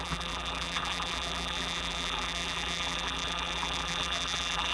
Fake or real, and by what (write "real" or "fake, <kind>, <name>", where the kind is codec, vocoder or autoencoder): fake, vocoder, BigVGAN v2